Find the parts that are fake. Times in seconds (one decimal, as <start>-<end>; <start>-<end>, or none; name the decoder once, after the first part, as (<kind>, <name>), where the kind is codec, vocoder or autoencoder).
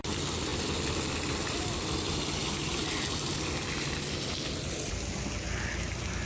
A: none